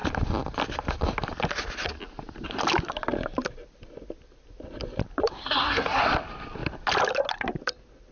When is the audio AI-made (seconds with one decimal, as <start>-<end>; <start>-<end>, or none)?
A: 5.3-6.0